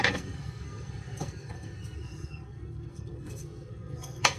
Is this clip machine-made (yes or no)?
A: yes